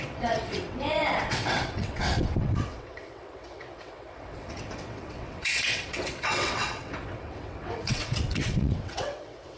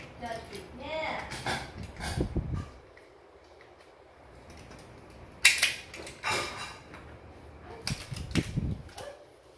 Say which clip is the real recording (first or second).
second